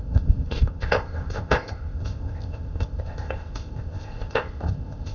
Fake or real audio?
fake